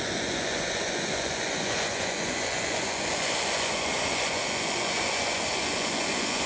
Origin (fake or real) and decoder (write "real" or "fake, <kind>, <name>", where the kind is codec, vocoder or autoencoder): fake, vocoder, Vocos